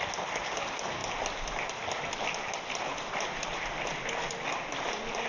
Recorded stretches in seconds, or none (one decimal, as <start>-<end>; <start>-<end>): 0.0-5.3